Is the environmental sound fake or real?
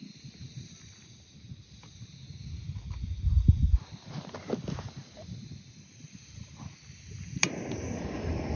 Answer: real